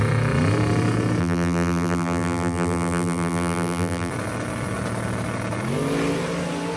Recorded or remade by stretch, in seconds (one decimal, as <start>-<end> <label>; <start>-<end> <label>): 0.0-1.2 recorded; 1.2-4.1 remade; 4.1-6.8 recorded